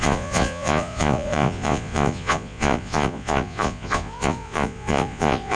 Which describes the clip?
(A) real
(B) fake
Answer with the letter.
B